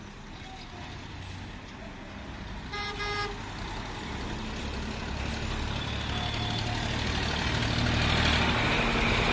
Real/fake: real